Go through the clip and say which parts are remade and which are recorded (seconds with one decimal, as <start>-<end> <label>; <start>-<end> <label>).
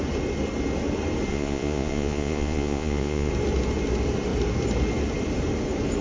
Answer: 0.0-1.3 recorded; 1.3-3.3 remade; 3.3-6.0 recorded